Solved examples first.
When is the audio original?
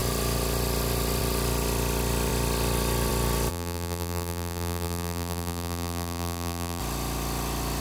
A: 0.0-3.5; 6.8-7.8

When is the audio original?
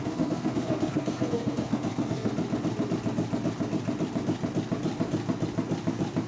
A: 2.3-6.3